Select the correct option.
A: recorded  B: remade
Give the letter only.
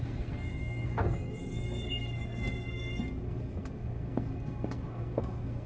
B